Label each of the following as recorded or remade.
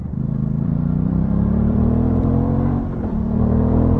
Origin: remade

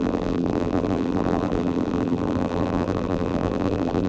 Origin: remade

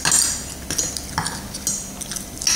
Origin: recorded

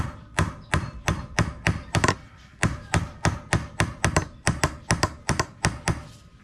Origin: remade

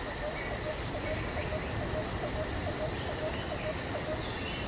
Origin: recorded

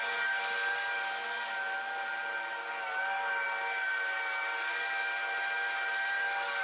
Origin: recorded